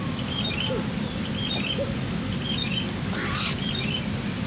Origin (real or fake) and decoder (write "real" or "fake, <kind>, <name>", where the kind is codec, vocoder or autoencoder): real